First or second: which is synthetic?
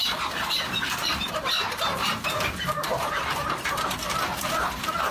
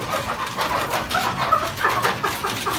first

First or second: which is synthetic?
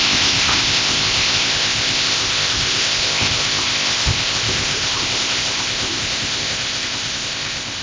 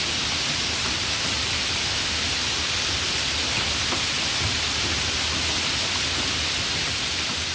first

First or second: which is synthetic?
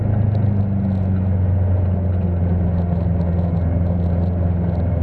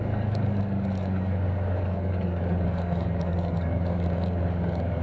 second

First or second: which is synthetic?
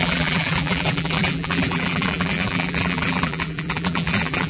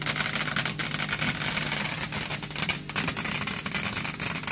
first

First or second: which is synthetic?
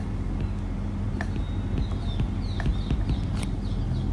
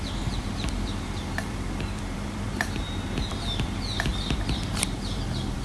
second